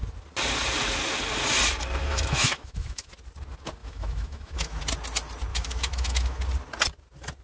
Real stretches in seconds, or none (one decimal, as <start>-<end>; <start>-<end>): 0.0-2.0; 3.1-3.8; 4.8-5.5; 6.4-7.4